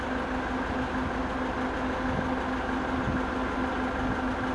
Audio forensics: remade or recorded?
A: recorded